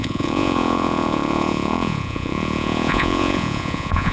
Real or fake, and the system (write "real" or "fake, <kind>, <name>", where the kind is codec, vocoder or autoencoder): fake, vocoder, Vocos